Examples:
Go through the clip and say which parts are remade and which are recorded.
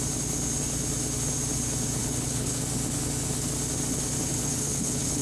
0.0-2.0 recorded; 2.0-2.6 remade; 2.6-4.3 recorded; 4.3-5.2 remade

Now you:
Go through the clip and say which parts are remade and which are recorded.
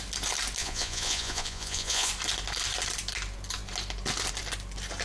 0.0-0.6 recorded; 0.6-2.1 remade; 2.1-5.0 recorded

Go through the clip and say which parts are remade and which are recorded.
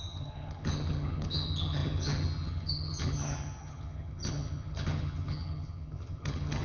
0.0-6.6 remade